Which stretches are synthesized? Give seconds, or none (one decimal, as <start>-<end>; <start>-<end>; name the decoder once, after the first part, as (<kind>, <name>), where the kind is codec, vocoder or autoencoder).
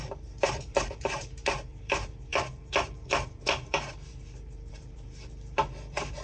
0.0-6.2 (vocoder, BigVGAN v2)